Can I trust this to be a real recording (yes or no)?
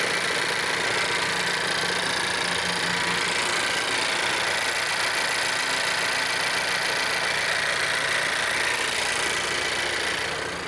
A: yes